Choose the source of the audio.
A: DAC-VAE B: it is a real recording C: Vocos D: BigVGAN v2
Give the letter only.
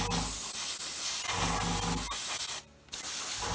B